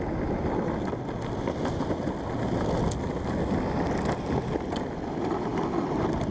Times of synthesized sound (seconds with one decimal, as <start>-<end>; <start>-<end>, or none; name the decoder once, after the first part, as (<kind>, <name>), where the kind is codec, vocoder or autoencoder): none